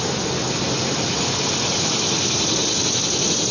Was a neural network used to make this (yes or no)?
no